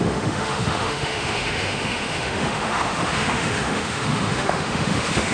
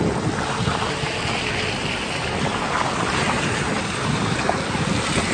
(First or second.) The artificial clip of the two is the first